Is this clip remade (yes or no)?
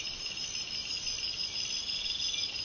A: no